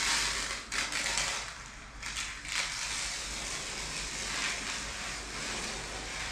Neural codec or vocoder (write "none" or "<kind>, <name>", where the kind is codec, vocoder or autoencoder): none